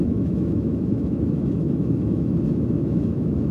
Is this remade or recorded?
remade